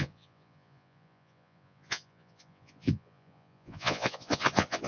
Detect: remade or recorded remade